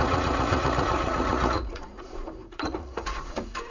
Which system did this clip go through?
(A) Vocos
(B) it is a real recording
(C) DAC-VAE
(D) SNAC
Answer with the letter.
A